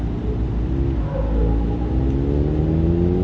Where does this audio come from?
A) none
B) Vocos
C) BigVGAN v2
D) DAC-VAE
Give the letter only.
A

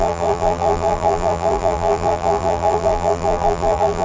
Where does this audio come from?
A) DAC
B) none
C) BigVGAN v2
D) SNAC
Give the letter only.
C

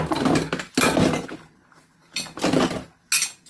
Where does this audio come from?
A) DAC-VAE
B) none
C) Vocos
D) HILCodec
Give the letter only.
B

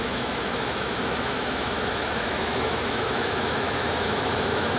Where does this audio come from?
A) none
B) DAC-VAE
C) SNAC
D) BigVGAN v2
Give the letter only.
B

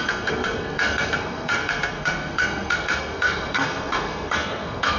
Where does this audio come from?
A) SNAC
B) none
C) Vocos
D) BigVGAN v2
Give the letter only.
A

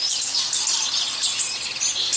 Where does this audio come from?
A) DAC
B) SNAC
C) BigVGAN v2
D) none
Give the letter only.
D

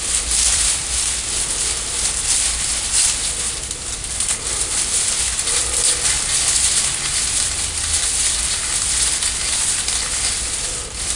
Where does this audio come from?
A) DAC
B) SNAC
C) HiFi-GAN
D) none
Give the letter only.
D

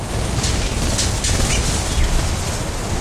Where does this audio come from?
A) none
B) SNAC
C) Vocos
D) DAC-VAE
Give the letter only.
A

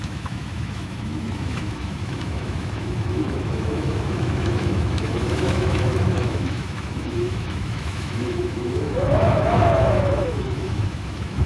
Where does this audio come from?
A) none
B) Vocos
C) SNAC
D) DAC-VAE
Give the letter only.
D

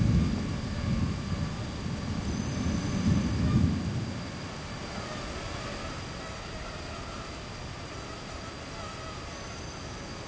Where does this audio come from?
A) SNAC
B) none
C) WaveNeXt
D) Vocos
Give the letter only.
B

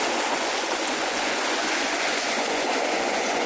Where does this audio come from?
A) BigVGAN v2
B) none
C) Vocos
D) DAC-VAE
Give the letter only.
C